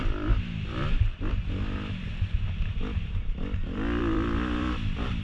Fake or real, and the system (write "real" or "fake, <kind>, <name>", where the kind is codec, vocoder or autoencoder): fake, vocoder, BigVGAN v2